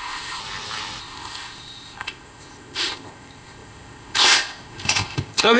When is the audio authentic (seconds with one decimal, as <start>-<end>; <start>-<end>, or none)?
0.4-1.0